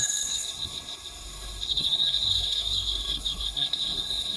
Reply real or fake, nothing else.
fake